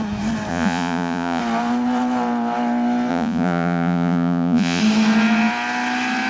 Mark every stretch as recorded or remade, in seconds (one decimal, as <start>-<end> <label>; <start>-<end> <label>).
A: 0.0-0.5 recorded; 0.5-1.4 remade; 1.4-3.1 recorded; 3.1-4.8 remade; 4.8-6.3 recorded